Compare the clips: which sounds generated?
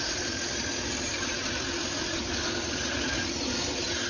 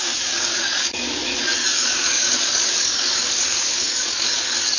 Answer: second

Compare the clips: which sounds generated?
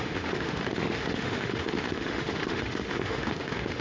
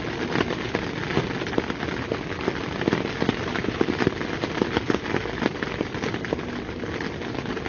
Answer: first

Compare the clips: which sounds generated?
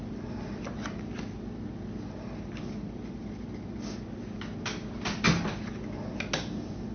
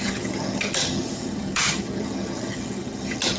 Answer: second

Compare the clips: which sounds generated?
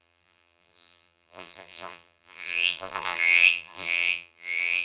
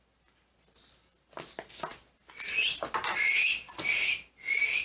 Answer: first